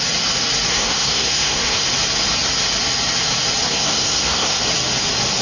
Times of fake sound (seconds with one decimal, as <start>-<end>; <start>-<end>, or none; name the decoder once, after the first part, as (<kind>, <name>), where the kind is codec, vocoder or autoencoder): 0.7-1.9 (codec, SNAC); 3.7-4.6